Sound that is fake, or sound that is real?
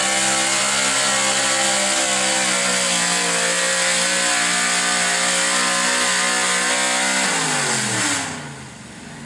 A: real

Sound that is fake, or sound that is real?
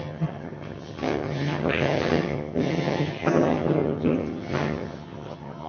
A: fake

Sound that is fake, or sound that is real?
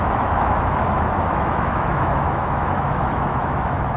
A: fake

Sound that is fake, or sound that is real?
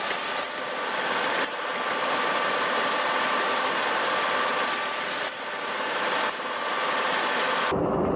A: real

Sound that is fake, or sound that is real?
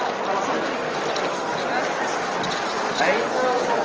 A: real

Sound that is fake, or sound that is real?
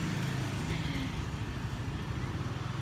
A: real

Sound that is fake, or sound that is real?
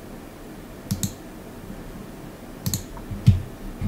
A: real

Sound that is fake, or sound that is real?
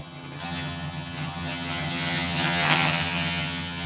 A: fake